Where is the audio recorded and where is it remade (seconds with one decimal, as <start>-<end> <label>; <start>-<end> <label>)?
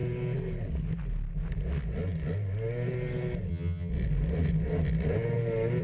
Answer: 0.0-3.5 recorded; 3.5-3.9 remade; 3.9-5.8 recorded